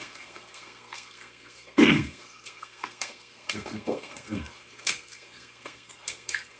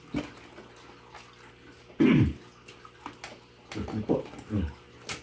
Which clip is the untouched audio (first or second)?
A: second